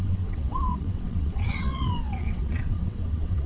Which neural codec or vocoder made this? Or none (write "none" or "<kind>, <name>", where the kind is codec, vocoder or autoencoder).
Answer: vocoder, WaveNeXt